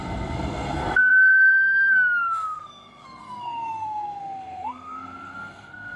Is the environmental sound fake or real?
fake